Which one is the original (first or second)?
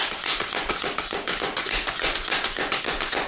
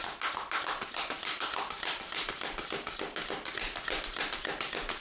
second